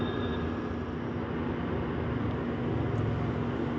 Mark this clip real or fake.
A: real